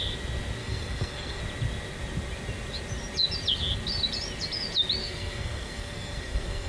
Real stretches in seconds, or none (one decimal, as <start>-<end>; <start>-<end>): 0.0-0.6; 1.4-5.0